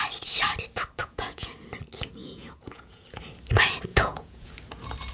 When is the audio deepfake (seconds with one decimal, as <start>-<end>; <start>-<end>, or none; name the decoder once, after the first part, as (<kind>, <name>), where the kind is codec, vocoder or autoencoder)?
1.0-1.5 (vocoder, Vocos); 2.2-3.2; 3.9-4.5